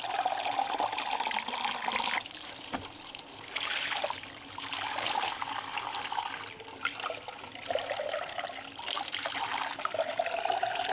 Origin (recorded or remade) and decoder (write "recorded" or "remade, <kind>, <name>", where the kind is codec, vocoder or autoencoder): recorded